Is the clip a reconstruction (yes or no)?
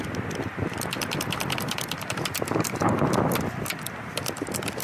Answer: no